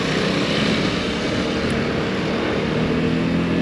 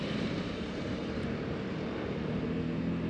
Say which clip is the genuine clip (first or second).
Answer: first